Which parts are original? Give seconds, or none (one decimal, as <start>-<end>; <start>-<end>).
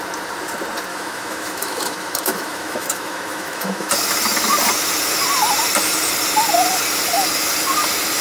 0.0-0.9; 3.9-8.2